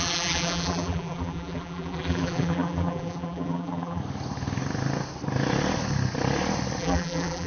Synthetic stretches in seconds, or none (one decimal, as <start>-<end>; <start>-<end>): 0.0-4.0; 6.8-7.5